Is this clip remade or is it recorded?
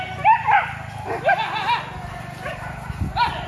recorded